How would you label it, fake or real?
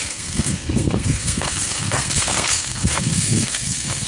fake